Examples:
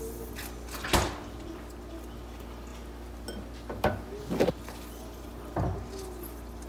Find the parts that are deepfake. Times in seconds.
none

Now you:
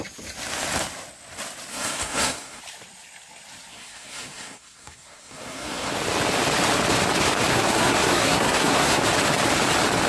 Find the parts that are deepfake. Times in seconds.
1.7-2.6 (codec, SNAC); 3.7-5.9; 7.5-9.0

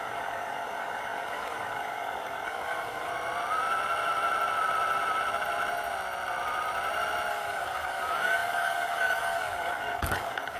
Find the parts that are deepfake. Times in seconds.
0.0-3.1 (codec, DAC); 7.3-10.6

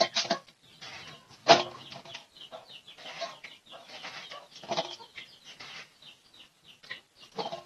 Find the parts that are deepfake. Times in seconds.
3.8-6.8 (vocoder, BigVGAN v2)

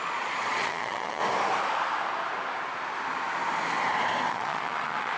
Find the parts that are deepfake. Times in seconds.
0.0-1.2 (vocoder, Vocos); 4.3-5.2

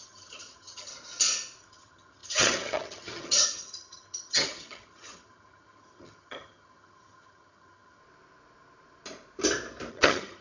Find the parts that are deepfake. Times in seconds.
0.0-0.9 (vocoder, HiFi-GAN); 1.6-8.0; 9.9-10.4